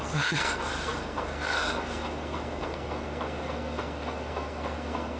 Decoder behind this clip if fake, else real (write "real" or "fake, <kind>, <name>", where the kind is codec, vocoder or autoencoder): fake, codec, SNAC